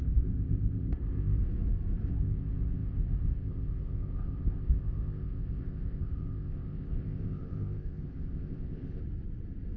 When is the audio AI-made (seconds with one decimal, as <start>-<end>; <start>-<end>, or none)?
0.0-1.4; 2.1-9.0